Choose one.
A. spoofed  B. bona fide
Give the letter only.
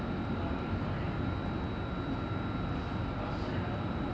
B